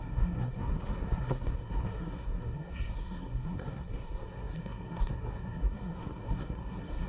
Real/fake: fake